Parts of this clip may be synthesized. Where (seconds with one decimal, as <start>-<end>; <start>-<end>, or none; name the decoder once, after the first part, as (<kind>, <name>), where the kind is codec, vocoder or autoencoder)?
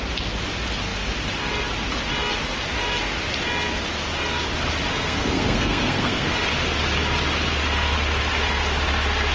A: 4.9-6.3 (codec, SNAC)